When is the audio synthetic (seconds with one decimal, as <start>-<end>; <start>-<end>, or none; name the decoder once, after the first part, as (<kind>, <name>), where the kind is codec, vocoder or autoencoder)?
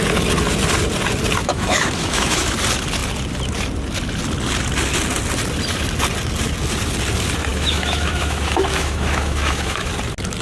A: 1.4-2.5 (autoencoder, DAC-VAE); 7.5-9.9